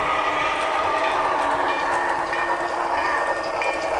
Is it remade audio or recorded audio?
recorded